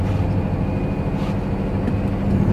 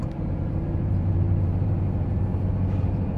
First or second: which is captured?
first